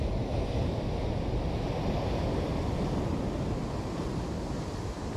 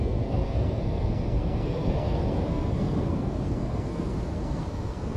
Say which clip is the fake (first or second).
second